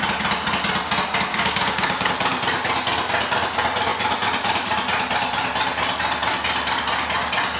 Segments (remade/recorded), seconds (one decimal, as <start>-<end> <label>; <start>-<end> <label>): 0.0-1.3 recorded; 1.3-2.1 remade; 2.1-7.6 recorded

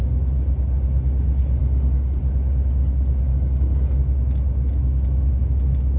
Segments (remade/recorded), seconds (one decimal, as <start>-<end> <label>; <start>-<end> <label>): 0.0-1.6 recorded; 1.6-2.2 remade; 2.2-3.3 recorded; 3.3-4.0 remade; 4.0-6.0 recorded

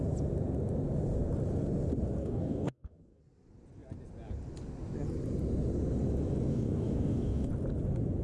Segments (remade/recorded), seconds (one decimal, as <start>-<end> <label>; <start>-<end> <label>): 0.0-2.2 recorded; 2.2-3.2 remade; 3.2-6.5 recorded; 6.5-7.5 remade; 7.5-8.2 recorded

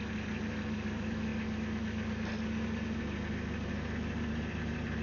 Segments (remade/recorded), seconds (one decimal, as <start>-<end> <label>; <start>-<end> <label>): 0.0-5.0 recorded

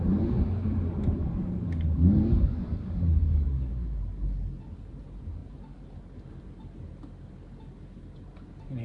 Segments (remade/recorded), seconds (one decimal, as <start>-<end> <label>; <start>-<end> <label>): 0.0-1.2 recorded; 1.2-3.7 remade; 3.7-8.8 recorded

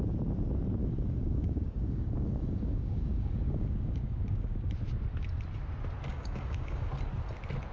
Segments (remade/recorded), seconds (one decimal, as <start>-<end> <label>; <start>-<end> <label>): 0.0-0.8 recorded; 0.8-4.7 remade; 4.7-6.1 recorded; 6.1-6.9 remade; 6.9-7.7 recorded